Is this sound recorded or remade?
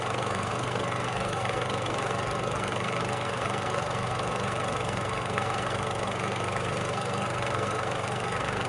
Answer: remade